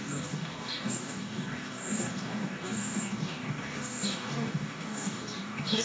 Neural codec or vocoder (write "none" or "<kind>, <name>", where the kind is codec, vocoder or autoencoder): codec, DAC